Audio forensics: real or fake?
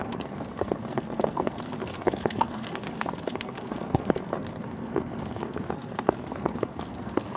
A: fake